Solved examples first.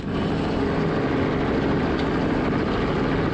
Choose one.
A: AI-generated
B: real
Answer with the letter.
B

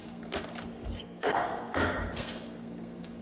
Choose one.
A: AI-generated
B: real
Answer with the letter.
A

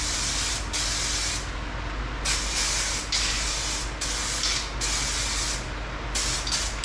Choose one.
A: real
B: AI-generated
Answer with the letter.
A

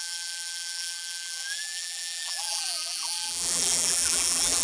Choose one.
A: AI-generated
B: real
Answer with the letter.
A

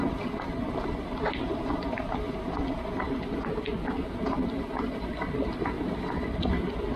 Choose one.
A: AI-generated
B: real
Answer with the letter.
B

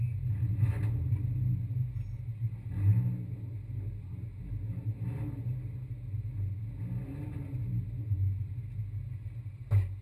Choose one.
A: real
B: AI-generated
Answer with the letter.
A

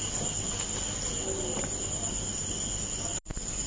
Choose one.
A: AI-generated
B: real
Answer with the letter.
B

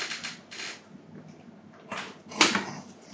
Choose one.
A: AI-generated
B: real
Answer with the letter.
B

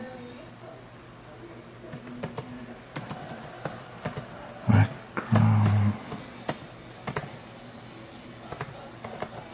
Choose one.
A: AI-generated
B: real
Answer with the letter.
B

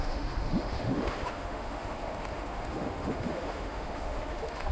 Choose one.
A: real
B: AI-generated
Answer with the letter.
B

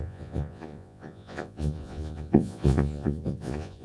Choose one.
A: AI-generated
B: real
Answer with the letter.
A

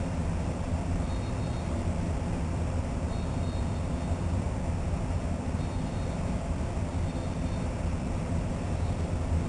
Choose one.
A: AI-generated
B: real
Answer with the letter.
A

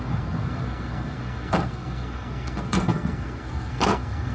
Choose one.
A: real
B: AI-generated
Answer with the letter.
B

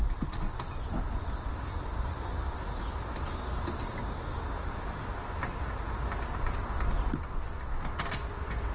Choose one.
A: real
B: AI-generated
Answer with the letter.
A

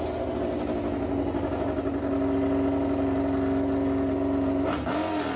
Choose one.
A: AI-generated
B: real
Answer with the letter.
B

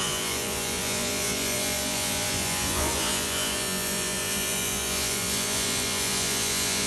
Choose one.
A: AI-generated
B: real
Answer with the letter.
A